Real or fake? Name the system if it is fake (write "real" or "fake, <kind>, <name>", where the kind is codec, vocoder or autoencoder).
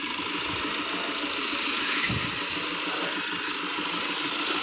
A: real